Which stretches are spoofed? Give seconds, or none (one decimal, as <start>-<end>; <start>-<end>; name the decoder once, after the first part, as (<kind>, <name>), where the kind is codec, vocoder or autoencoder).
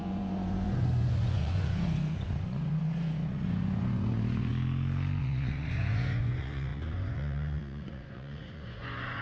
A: 0.0-4.5 (vocoder, Vocos); 5.2-9.2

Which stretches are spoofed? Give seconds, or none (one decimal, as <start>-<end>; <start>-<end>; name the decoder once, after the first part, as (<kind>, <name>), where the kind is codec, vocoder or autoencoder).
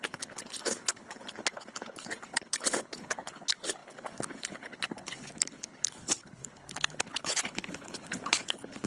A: 0.0-8.9 (codec, HILCodec)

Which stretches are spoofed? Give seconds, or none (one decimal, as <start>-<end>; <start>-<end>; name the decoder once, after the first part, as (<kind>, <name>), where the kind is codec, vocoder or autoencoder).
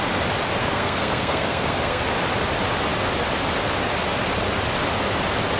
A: 0.6-2.0 (codec, SNAC)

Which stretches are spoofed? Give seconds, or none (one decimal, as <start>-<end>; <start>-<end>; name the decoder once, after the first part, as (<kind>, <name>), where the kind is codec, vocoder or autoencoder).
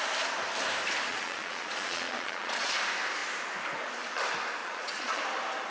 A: 1.1-2.7 (vocoder, Vocos); 4.6-5.2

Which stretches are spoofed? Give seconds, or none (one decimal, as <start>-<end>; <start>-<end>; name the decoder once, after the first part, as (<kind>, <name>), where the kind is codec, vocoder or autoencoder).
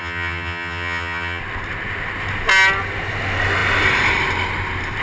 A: 0.0-1.4 (vocoder, HiFi-GAN)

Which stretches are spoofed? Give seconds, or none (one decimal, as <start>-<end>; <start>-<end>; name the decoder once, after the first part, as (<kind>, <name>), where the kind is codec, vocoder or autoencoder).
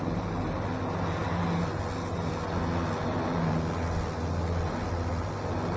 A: none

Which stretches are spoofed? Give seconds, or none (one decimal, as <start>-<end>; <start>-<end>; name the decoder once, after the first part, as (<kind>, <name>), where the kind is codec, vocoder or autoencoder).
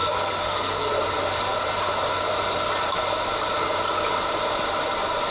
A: 0.0-0.9 (codec, SNAC)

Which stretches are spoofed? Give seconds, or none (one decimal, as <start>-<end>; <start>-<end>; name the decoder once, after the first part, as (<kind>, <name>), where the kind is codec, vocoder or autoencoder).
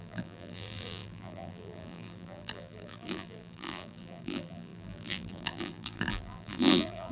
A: 0.0-7.1 (vocoder, BigVGAN v2)